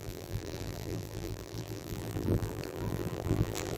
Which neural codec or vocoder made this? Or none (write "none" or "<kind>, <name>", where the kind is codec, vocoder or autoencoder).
vocoder, BigVGAN v2